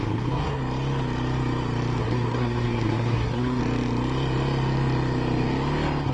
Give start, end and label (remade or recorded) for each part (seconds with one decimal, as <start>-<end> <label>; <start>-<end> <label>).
0.0-0.6 remade; 0.6-2.0 recorded; 2.0-3.6 remade; 3.6-6.1 recorded